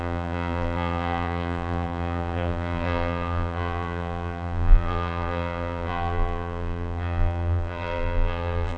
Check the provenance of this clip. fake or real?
fake